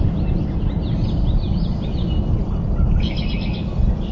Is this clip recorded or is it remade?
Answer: recorded